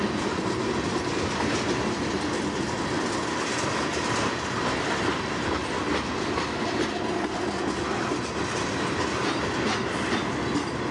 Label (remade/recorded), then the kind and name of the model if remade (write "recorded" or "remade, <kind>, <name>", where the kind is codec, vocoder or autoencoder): recorded